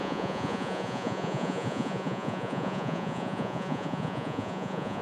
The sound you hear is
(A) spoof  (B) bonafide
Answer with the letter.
A